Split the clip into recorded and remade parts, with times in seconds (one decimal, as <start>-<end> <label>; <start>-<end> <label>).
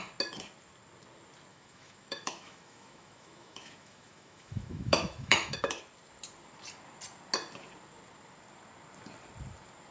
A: 0.0-1.5 recorded; 1.5-5.8 remade; 5.8-9.9 recorded